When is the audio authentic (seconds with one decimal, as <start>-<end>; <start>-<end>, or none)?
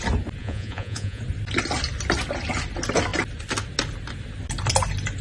0.0-0.4; 1.2-5.2